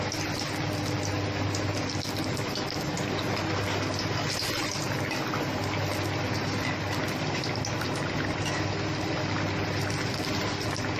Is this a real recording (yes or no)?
yes